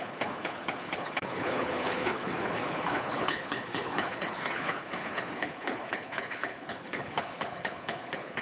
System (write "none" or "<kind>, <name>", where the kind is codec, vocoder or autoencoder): codec, HILCodec